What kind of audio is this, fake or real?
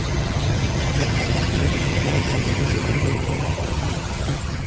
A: fake